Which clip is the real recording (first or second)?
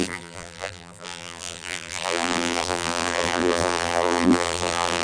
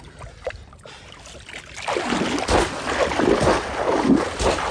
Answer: second